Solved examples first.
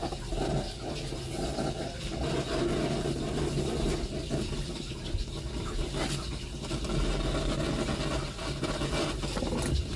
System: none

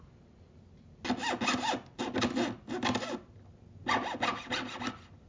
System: none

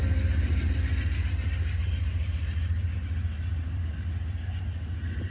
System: none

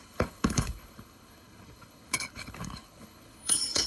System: codec, HILCodec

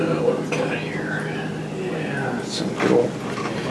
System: none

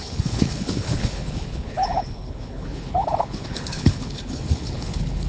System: codec, HILCodec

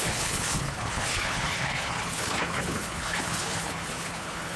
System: codec, HILCodec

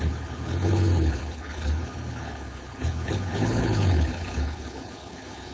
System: codec, HILCodec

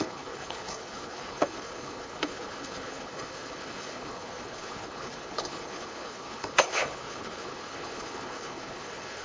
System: codec, HILCodec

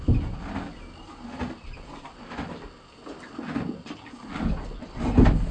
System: none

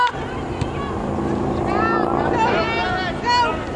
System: none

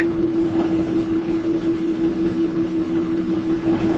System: codec, HILCodec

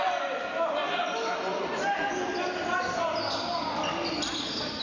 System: none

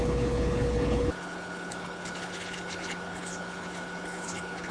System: codec, HILCodec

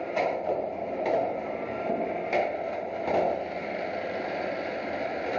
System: none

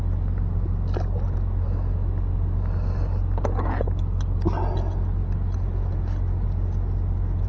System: none